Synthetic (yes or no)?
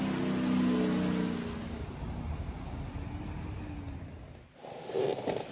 no